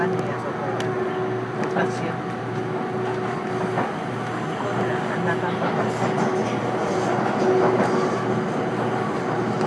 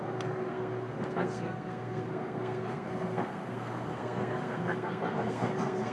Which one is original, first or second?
first